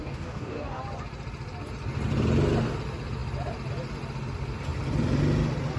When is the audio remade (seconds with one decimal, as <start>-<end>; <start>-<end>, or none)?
0.0-0.8

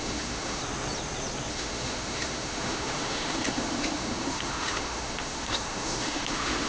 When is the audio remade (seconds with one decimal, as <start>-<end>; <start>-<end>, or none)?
0.0-0.6; 1.5-6.7

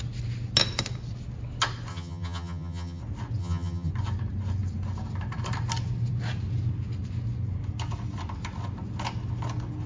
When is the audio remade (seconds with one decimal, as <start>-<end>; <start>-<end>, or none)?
1.9-3.0; 3.4-3.9

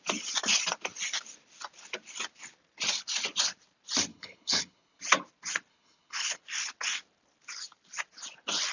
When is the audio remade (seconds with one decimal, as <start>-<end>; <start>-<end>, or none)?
4.1-5.0; 5.7-6.4

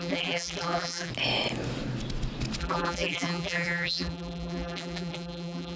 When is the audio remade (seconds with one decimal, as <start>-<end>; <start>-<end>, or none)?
0.0-1.1; 2.6-5.8